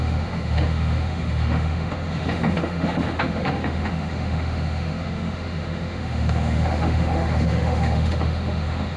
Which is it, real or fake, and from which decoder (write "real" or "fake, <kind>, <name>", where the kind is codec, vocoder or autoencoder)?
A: fake, autoencoder, DAC-VAE